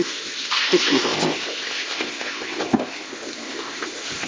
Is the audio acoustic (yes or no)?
no